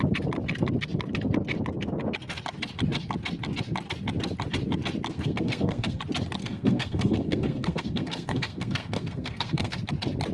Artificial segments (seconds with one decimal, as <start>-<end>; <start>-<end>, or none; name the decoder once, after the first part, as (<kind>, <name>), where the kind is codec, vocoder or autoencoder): 5.1-6.0 (codec, SNAC); 6.4-9.8